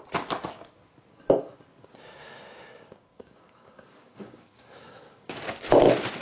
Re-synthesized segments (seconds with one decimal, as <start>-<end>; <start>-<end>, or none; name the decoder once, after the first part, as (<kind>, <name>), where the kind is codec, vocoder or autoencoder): 1.7-5.4 (codec, DAC)